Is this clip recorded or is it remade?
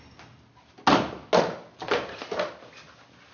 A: recorded